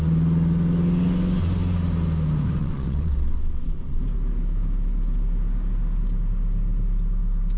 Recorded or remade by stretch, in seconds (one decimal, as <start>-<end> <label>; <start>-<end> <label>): 0.0-2.6 recorded; 2.6-4.0 remade; 4.0-7.6 recorded